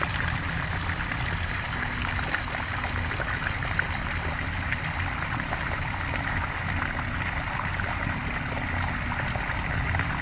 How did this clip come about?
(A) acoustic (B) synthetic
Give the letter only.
A